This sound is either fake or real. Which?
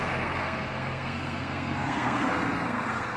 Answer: fake